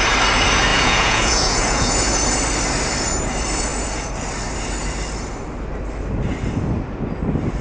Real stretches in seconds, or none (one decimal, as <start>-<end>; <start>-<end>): 0.0-0.7; 1.9-7.6